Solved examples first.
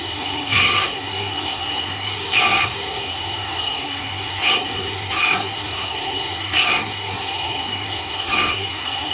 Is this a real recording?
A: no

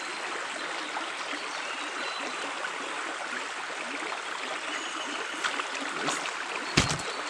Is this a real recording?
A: yes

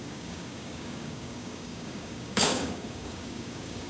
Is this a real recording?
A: no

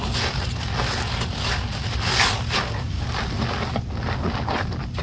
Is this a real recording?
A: yes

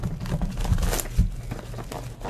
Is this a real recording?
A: yes